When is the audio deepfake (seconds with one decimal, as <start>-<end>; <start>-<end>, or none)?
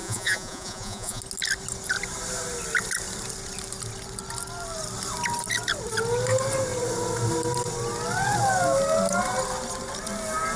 0.0-1.2